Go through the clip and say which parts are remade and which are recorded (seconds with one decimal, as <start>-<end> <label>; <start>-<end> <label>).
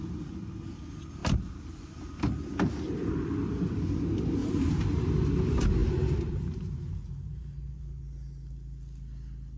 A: 0.0-1.2 recorded; 1.2-2.0 remade; 2.0-4.4 recorded; 4.4-5.1 remade; 5.1-5.8 recorded; 5.8-8.0 remade; 8.0-9.6 recorded